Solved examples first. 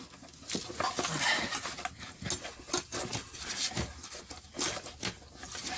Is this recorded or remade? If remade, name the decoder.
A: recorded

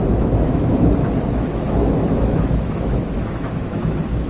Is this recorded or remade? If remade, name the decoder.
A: remade, autoencoder, DAC-VAE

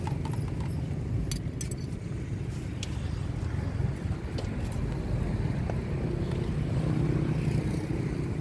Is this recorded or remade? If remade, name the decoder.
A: recorded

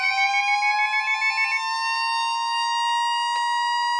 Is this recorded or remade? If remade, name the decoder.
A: recorded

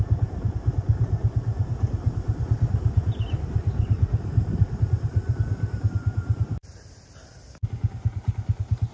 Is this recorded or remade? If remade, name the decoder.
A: recorded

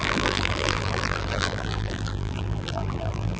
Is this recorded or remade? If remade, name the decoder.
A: remade, vocoder, BigVGAN v2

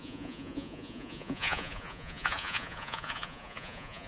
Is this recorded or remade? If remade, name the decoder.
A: remade, vocoder, Vocos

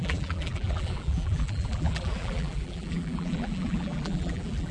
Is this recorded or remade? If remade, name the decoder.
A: remade, vocoder, BigVGAN v2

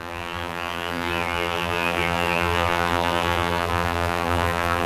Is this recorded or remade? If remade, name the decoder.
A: remade, vocoder, BigVGAN v2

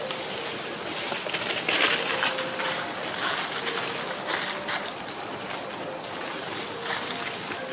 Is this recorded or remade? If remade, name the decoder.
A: recorded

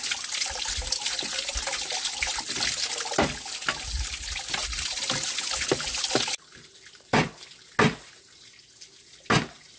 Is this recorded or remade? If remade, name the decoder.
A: recorded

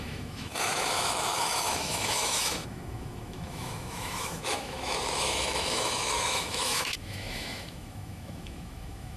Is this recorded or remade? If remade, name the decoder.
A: remade, autoencoder, DAC-VAE